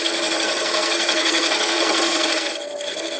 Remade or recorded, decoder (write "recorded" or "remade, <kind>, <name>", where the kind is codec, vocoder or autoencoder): remade, codec, SNAC